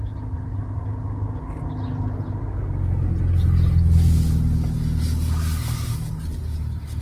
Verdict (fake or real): real